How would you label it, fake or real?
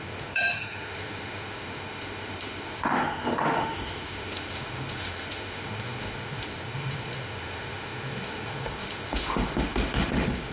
fake